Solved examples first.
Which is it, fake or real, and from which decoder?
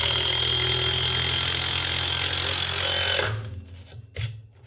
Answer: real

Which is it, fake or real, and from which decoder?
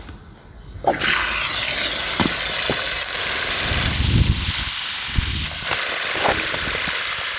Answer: real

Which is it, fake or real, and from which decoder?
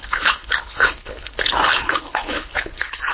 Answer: fake, codec, HILCodec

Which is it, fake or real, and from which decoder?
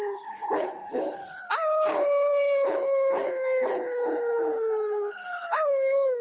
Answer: fake, codec, HILCodec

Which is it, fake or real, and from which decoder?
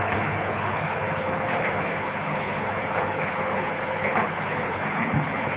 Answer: fake, codec, HILCodec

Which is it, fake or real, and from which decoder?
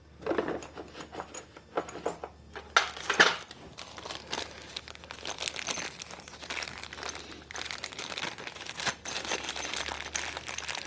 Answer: real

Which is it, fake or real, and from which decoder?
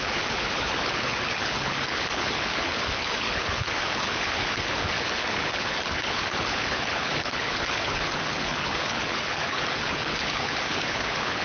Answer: fake, codec, HILCodec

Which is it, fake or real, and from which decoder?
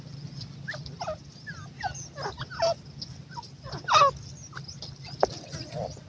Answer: real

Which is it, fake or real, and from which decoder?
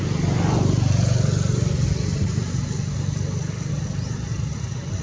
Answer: real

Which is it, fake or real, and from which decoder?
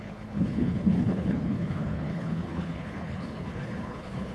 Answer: fake, codec, HILCodec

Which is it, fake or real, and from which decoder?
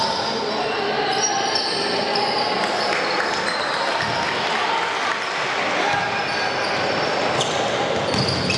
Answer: real